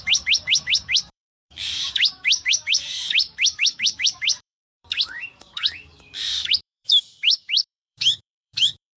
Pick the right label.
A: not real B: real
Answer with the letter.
A